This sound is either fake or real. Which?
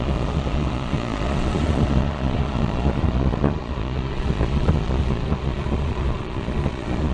fake